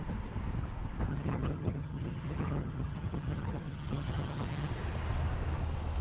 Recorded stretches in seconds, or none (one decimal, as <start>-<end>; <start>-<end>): 0.0-1.1; 4.7-6.0